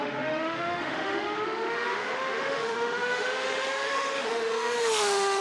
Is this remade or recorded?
remade